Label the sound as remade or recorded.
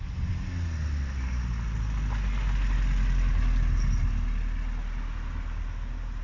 recorded